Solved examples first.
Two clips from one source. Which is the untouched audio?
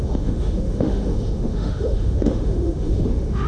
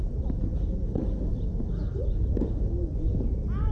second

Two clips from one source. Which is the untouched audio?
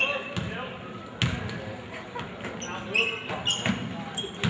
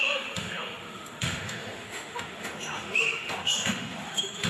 first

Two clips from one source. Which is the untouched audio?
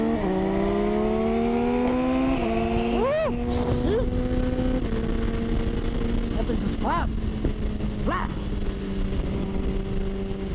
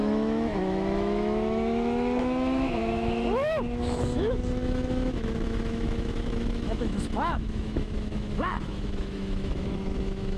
first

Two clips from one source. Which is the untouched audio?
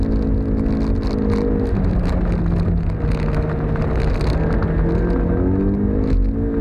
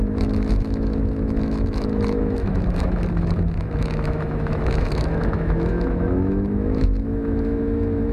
first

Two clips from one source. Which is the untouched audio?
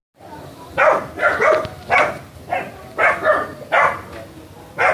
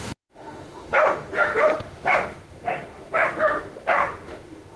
first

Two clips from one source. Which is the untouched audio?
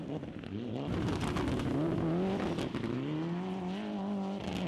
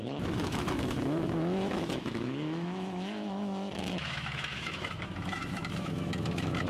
first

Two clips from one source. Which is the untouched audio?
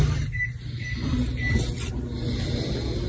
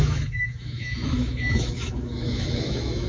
first